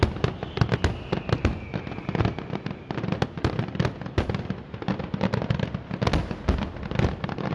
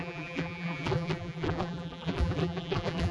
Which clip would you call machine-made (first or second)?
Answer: second